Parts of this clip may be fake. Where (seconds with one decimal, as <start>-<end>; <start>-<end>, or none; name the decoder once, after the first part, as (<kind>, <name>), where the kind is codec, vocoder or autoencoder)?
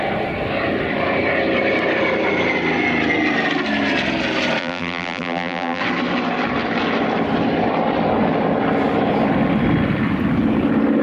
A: 4.6-5.8 (vocoder, BigVGAN v2)